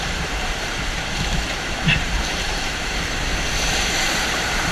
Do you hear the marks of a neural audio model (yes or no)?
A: yes